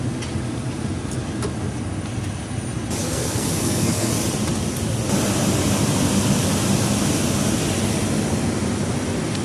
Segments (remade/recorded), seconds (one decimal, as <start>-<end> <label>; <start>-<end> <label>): 0.0-3.0 recorded; 3.0-4.1 remade; 4.1-9.4 recorded